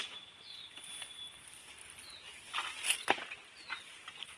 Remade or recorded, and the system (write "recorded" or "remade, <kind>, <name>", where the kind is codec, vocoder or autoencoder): recorded